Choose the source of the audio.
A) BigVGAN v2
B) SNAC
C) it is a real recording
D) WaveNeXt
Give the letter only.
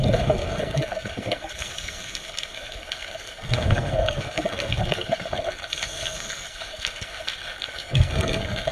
B